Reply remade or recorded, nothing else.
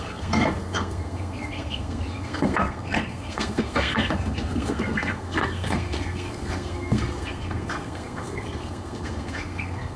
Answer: remade